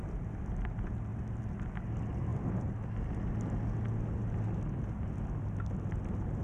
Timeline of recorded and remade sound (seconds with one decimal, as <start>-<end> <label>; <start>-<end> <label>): 0.0-6.4 recorded

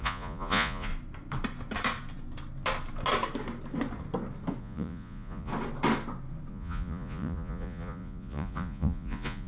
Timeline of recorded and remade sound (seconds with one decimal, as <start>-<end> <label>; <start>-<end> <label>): 0.0-0.9 remade; 0.9-4.6 recorded; 4.6-5.5 remade; 5.5-6.5 recorded; 6.5-9.5 remade